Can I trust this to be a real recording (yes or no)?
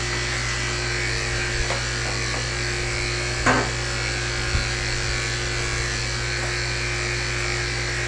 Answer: yes